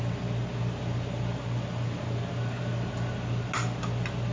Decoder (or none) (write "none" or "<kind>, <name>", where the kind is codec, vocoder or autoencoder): none